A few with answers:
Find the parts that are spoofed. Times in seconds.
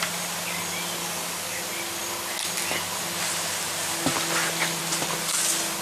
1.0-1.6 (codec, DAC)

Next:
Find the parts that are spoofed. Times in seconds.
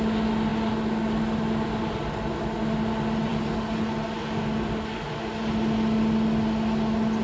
none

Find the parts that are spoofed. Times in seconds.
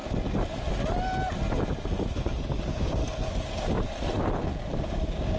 2.6-3.0 (codec, DAC); 4.8-5.4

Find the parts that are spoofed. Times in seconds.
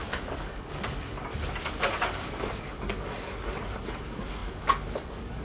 0.0-5.4 (codec, DAC)